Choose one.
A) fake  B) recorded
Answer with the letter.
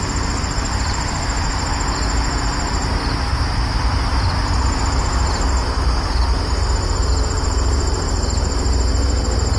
A